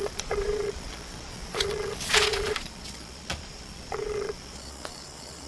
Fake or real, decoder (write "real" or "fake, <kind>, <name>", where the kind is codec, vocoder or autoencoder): fake, vocoder, Vocos